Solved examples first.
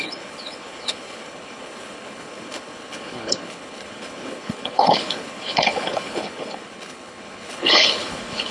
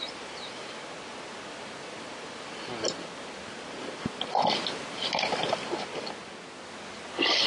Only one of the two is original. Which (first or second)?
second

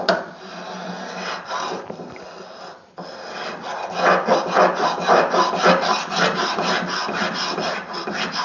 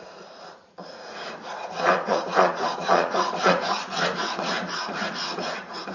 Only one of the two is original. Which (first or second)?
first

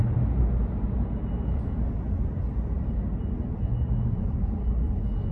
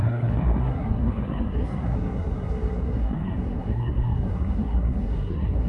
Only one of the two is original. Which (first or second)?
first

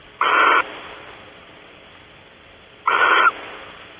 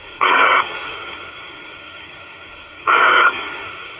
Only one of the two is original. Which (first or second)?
first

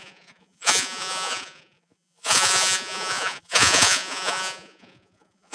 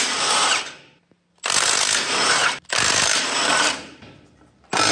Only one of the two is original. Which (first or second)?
second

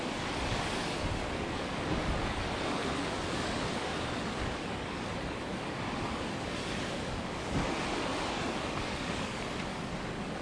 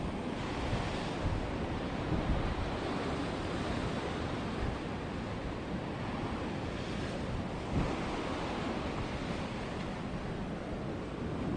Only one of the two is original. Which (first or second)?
second